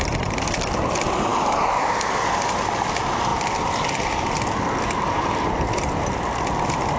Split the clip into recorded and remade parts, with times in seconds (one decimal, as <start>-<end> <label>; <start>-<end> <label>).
0.0-7.0 recorded